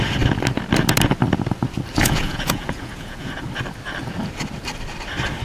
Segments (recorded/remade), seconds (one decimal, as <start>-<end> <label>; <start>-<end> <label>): 0.0-2.0 recorded; 2.0-3.3 remade; 3.3-5.4 recorded